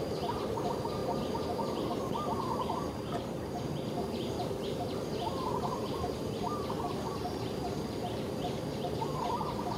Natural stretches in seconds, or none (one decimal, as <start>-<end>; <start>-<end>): 1.0-2.0